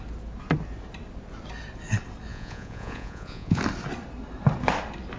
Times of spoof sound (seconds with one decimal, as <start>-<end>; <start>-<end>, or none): 2.3-3.6